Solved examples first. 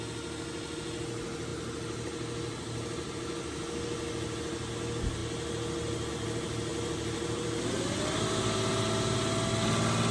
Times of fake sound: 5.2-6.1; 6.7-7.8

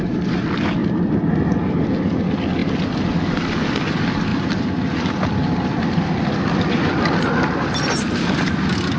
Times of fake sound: 0.8-1.9; 2.6-3.1; 4.3-8.5

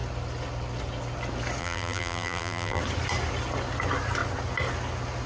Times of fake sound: 1.6-2.8

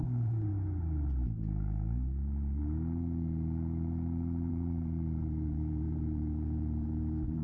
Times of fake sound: 0.0-0.5; 4.5-7.4

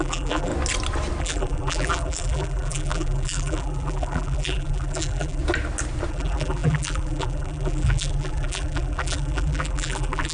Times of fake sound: 0.0-0.5; 1.2-5.4; 6.1-10.3

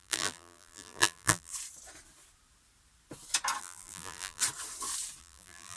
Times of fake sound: 0.0-1.5; 3.6-4.4; 5.2-5.8